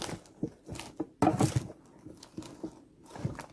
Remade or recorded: recorded